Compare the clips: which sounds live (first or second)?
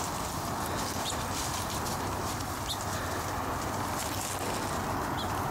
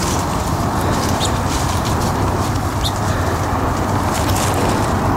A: first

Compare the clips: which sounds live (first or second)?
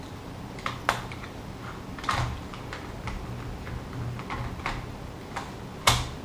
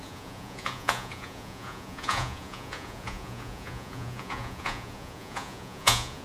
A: first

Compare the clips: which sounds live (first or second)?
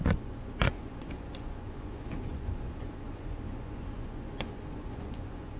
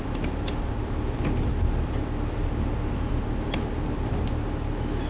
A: second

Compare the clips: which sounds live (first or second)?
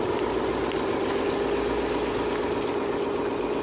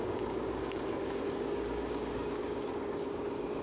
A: first